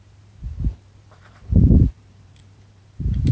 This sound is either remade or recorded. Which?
remade